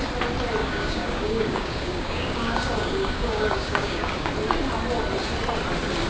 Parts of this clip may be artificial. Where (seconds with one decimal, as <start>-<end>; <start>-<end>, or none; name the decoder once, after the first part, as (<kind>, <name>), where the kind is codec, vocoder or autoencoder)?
0.6-4.3 (codec, DAC)